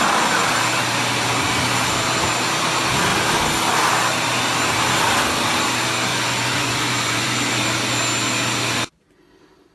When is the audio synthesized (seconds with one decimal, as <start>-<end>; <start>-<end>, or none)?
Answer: 6.1-7.5